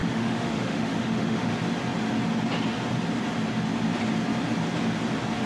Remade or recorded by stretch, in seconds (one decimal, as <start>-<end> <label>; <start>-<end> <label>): 0.0-1.5 remade; 1.5-5.5 recorded